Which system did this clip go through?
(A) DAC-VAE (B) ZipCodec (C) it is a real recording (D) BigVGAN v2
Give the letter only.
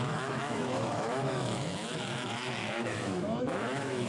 A